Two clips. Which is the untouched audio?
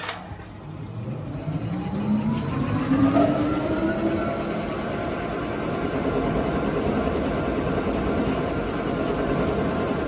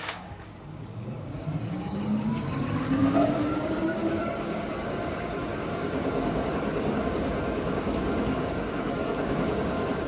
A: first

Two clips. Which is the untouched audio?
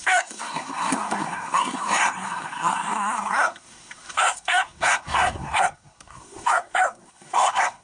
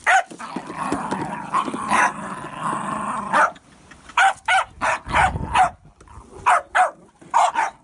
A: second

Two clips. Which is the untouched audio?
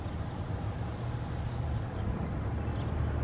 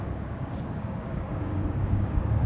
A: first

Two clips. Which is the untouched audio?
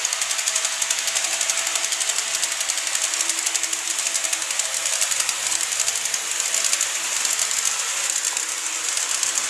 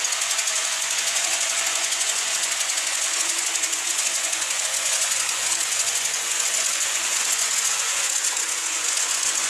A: first